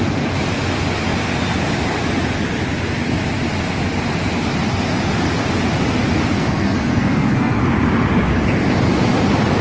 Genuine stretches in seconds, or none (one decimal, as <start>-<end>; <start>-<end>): 0.0-6.3; 7.6-9.6